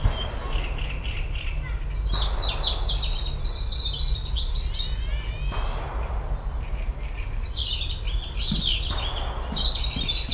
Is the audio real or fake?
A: real